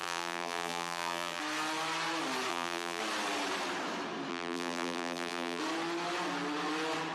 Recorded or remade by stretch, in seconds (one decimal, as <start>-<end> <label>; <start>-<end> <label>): 0.0-1.4 remade; 1.4-2.5 recorded; 2.5-3.0 remade; 3.0-4.3 recorded; 4.3-5.6 remade; 5.6-7.1 recorded